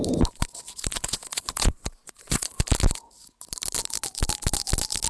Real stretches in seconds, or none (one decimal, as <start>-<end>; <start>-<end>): 0.0-0.9; 2.6-5.1